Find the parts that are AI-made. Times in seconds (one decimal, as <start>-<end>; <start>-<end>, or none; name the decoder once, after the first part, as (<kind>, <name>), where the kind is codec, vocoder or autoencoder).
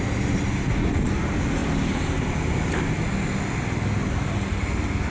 none